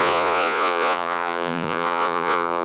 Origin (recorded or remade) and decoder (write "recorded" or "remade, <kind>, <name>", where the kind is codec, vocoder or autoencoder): remade, vocoder, Vocos